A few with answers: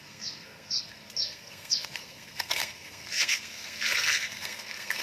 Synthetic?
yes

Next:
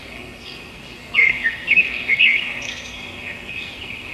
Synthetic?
yes